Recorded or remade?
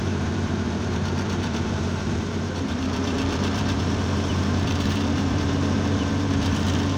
remade